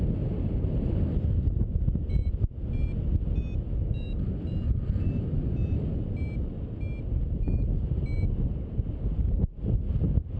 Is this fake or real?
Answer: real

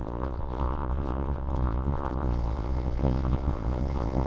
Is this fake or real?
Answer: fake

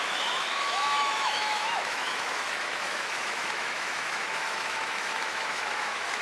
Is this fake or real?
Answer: fake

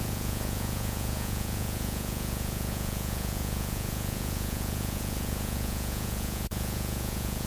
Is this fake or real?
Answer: fake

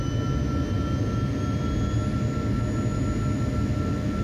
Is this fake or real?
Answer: real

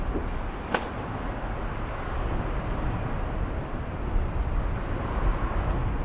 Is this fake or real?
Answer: real